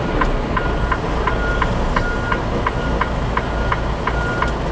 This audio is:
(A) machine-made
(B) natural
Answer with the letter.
B